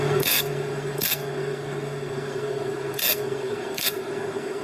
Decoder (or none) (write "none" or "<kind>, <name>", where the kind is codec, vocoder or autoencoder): codec, SNAC